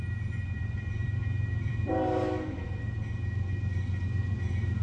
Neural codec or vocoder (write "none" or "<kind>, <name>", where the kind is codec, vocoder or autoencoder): vocoder, BigVGAN v2